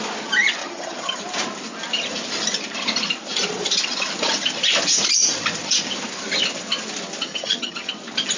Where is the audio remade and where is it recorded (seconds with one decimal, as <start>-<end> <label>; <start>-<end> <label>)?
0.0-0.6 recorded; 0.6-1.2 remade; 1.2-7.3 recorded; 7.3-7.9 remade; 7.9-8.4 recorded